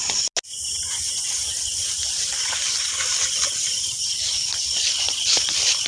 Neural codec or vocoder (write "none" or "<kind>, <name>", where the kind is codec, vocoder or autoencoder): none